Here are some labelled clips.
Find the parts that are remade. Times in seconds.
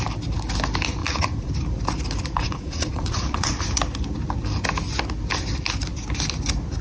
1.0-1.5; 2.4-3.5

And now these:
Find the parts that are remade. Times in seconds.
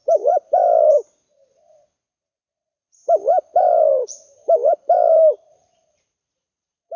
0.0-0.9; 2.6-7.0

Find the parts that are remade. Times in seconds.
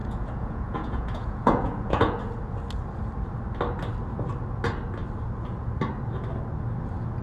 0.0-2.2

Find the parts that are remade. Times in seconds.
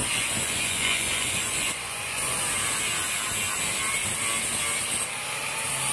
0.0-2.4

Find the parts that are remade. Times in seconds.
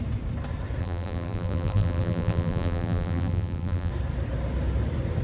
0.8-3.9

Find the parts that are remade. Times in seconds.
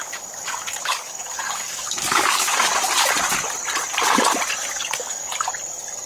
0.0-2.7; 4.7-5.3